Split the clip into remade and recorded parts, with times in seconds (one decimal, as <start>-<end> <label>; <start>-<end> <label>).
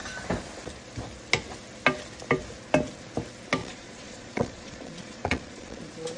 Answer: 0.0-3.6 recorded; 3.6-5.8 remade; 5.8-6.2 recorded